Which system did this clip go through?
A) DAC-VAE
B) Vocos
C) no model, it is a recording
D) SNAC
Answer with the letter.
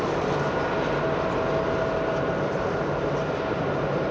C